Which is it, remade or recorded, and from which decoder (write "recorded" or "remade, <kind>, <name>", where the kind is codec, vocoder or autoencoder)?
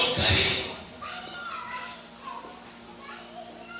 recorded